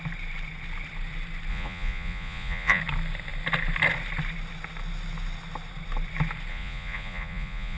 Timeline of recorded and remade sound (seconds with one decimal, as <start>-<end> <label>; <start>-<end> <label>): 0.0-1.5 recorded; 1.5-2.8 remade; 2.8-6.5 recorded; 6.5-7.8 remade

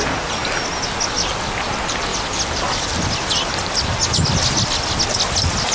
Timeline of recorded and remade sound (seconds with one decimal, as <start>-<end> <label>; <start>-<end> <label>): 0.0-5.7 recorded

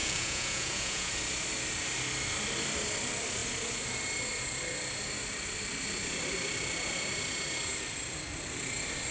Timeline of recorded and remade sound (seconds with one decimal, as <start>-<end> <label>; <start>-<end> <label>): 0.0-1.1 remade; 1.1-9.1 recorded